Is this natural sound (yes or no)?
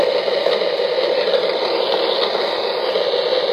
yes